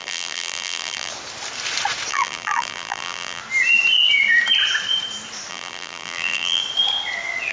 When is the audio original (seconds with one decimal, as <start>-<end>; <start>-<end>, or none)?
1.1-2.1; 3.4-5.5; 6.6-7.5